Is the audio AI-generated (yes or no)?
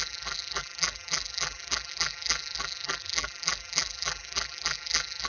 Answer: yes